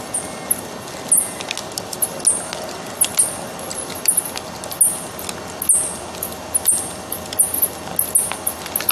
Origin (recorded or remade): recorded